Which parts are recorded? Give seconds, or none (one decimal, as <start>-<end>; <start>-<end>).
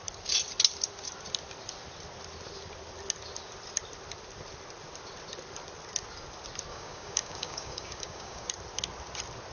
0.0-6.7; 8.5-9.5